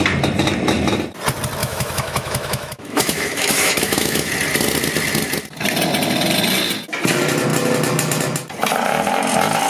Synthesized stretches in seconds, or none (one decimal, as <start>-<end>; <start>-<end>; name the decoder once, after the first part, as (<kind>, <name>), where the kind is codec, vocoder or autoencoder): 1.6-4.3 (autoencoder, DAC-VAE)